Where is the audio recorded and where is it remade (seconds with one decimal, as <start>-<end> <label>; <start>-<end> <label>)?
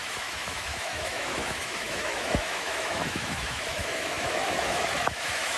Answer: 0.0-5.6 remade